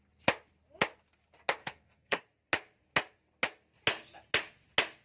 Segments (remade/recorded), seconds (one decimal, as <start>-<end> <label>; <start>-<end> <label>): 0.0-1.6 recorded; 1.6-2.2 remade; 2.2-5.0 recorded